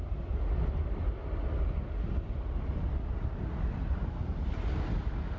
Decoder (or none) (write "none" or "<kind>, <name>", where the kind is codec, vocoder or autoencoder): none